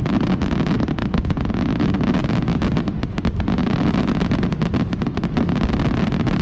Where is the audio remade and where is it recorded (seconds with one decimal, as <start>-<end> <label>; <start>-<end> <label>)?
0.0-1.0 recorded; 1.0-1.5 remade; 1.5-6.4 recorded